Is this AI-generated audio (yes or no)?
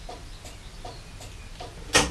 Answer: no